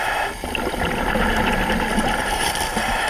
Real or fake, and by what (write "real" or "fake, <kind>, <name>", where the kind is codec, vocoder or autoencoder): real